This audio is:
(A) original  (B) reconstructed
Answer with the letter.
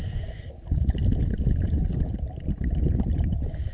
A